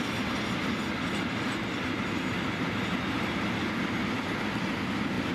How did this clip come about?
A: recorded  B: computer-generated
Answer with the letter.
A